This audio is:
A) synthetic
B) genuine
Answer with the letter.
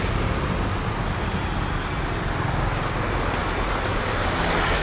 B